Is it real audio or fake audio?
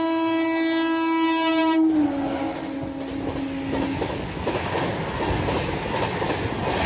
real